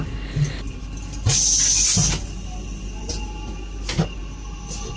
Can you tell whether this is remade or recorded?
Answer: recorded